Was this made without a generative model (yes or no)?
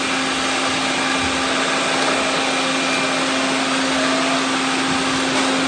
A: yes